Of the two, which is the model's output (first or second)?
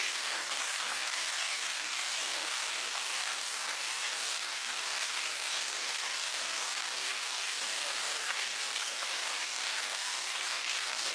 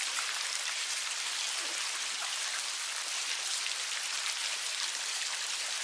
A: first